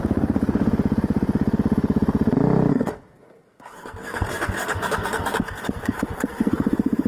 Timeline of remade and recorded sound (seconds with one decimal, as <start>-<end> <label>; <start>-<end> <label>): 0.0-2.7 recorded; 2.7-7.1 remade